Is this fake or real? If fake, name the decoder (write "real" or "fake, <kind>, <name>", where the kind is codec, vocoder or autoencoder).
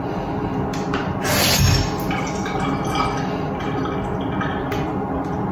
real